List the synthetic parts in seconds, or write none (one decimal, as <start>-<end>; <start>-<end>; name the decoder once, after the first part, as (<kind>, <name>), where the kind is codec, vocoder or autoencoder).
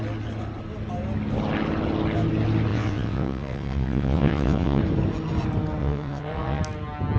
2.7-4.8 (vocoder, WaveNeXt); 5.8-6.6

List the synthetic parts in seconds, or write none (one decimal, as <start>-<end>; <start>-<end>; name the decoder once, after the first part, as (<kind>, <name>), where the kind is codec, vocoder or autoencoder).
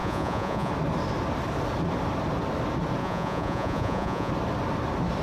0.0-0.7 (vocoder, Vocos); 3.0-4.3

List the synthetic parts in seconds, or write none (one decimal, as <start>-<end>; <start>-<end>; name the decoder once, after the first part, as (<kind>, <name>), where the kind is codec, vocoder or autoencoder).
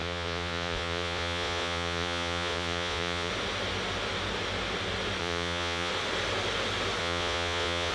0.0-3.3 (vocoder, Vocos); 5.2-5.9; 7.0-7.9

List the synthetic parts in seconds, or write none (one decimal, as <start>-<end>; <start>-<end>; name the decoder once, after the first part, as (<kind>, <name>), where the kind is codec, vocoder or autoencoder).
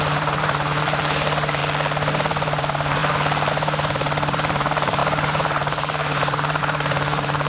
0.0-1.6 (vocoder, BigVGAN v2); 2.1-3.0; 3.5-7.5